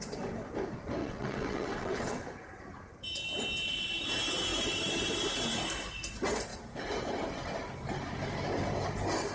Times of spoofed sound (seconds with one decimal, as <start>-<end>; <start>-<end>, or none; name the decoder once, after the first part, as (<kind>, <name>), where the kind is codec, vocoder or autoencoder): 1.0-2.2 (vocoder, WaveNeXt)